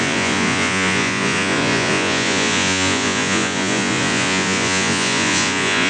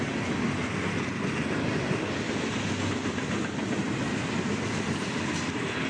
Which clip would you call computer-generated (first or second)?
first